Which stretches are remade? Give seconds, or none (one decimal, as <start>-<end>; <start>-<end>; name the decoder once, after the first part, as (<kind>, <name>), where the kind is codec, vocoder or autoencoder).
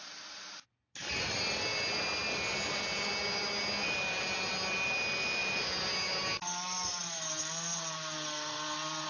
none